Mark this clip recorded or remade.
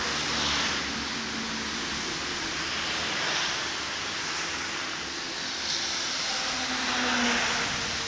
recorded